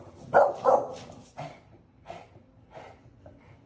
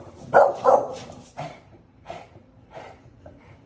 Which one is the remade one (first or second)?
second